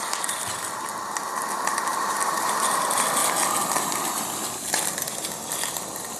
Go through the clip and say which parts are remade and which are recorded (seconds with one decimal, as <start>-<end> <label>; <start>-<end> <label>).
0.0-1.9 recorded; 1.9-2.7 remade; 2.7-6.2 recorded